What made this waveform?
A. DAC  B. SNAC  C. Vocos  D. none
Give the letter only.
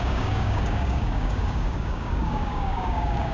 A